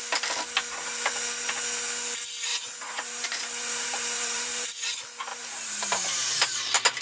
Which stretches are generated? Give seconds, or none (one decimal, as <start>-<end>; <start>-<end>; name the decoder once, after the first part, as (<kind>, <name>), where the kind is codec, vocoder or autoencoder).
2.5-4.7 (vocoder, BigVGAN v2); 5.3-6.6